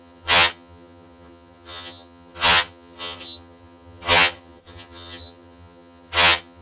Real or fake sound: fake